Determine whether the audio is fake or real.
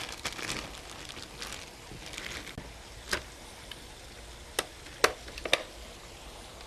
real